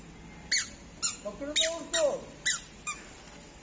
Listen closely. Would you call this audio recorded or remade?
recorded